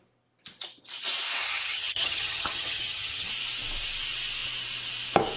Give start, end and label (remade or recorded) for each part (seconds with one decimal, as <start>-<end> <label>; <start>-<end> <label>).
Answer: 0.0-1.4 recorded; 1.4-3.3 remade; 3.3-5.4 recorded

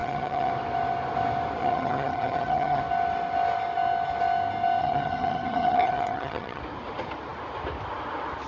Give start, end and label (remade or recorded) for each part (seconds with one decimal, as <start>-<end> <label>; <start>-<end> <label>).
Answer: 0.0-0.5 remade; 0.5-1.6 recorded; 1.6-2.8 remade; 2.8-4.8 recorded; 4.8-6.6 remade; 6.6-8.5 recorded

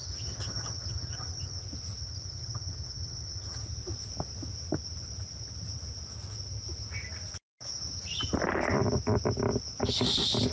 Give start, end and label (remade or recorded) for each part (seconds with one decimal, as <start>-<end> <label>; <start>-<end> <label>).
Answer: 0.0-1.6 remade; 1.6-2.0 recorded; 2.0-3.6 remade; 3.6-10.5 recorded

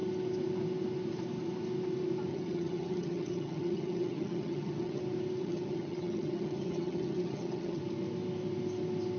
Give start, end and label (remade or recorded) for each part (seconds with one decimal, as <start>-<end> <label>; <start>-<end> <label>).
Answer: 0.0-2.3 recorded; 2.3-5.0 remade; 5.0-5.4 recorded; 5.4-7.8 remade; 7.8-9.2 recorded